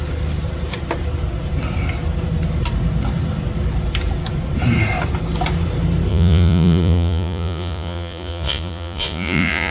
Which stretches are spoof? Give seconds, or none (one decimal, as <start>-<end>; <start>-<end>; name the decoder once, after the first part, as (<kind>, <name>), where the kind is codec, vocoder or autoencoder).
6.1-9.7 (vocoder, Vocos)